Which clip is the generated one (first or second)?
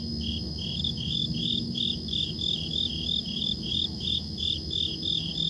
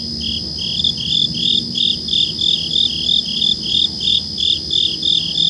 first